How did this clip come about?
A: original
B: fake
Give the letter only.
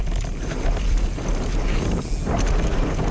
A